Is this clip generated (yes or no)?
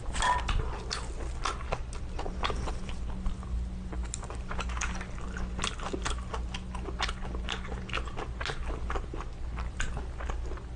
no